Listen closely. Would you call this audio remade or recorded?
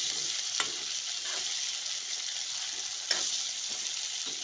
recorded